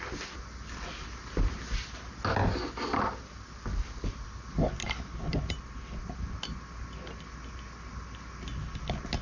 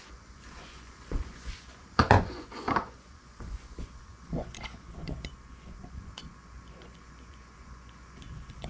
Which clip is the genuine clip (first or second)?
first